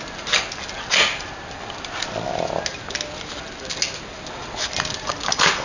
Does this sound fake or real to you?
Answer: real